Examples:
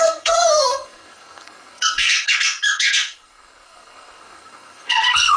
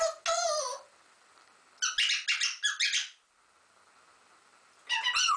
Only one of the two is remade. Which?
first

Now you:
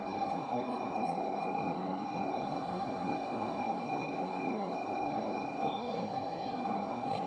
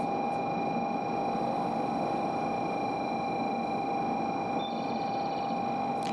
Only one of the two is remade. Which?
first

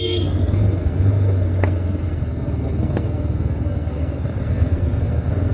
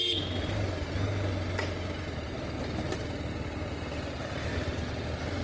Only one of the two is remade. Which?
first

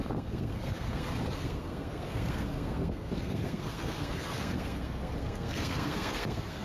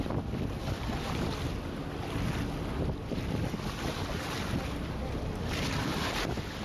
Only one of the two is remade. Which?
first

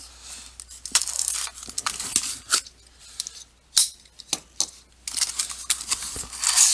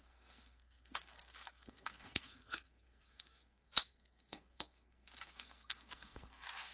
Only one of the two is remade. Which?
second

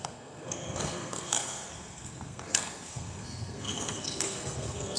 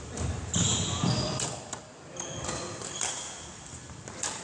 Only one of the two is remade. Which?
first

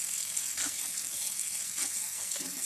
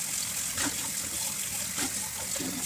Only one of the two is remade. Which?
first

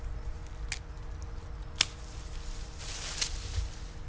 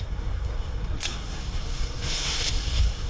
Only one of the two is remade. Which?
second